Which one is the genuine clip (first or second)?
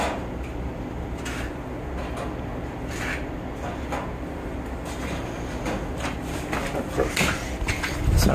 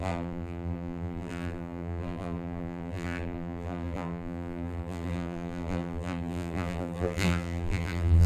first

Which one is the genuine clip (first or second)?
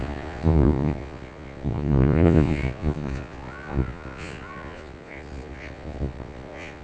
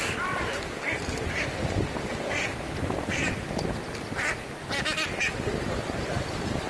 second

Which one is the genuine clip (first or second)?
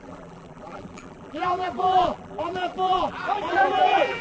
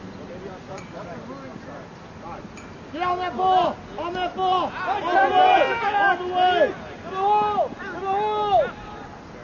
second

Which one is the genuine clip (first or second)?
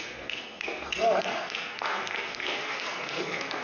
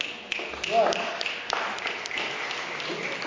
second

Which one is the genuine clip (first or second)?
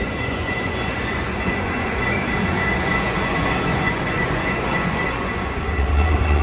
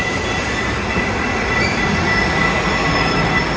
second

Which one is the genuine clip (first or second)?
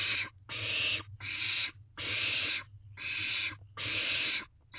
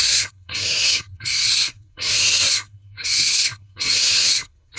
first